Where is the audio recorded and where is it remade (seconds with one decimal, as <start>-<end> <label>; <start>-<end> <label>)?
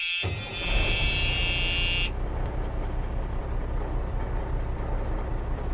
0.0-1.4 remade; 1.4-3.4 recorded; 3.4-5.7 remade